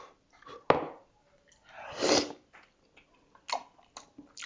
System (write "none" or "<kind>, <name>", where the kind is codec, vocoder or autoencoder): none